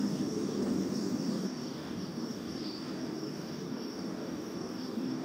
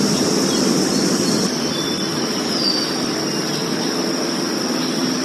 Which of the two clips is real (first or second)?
second